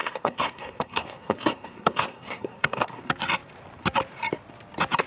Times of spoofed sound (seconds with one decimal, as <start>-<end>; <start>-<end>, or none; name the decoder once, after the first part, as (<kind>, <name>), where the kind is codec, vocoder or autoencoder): 0.0-3.0 (codec, SNAC)